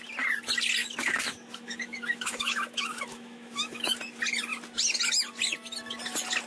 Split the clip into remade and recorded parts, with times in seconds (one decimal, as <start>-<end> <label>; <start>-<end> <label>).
0.0-0.8 recorded; 0.8-3.9 remade; 3.9-6.5 recorded